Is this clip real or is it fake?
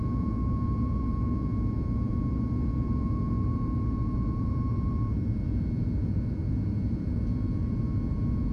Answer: fake